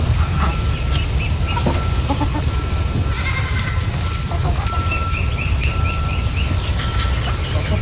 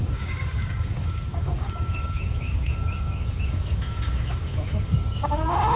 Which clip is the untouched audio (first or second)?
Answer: first